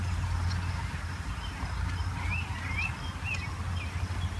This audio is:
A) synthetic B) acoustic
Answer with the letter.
B